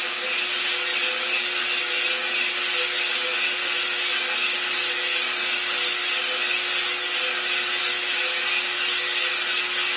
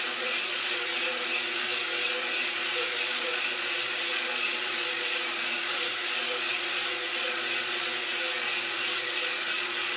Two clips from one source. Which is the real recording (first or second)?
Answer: first